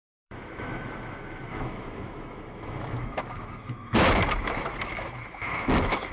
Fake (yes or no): yes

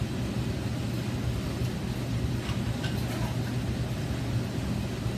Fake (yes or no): no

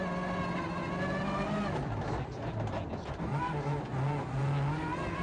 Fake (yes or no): no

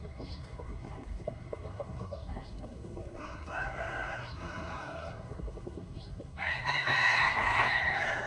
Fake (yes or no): yes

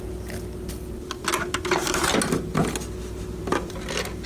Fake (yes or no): no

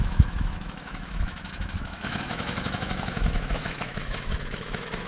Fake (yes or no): yes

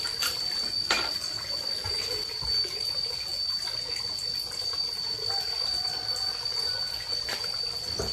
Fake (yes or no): no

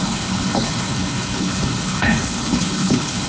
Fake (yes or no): yes